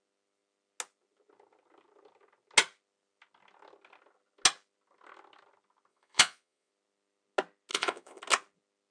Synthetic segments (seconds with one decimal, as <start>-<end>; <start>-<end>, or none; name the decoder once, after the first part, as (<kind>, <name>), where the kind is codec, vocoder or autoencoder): 5.9-6.7 (vocoder, Vocos); 7.7-8.2